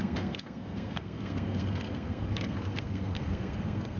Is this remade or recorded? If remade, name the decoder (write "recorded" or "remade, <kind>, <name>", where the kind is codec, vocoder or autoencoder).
remade, codec, SNAC